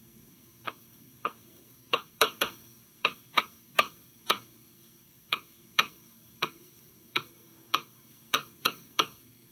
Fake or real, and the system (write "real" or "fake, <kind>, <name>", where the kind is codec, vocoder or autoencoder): fake, codec, SNAC